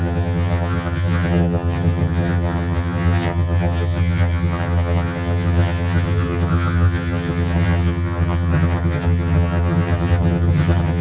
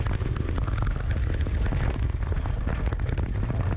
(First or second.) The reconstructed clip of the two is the first